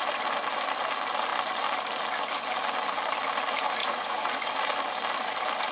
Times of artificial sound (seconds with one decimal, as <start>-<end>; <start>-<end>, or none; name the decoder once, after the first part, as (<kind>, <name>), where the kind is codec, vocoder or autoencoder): 3.8-4.4 (vocoder, Vocos)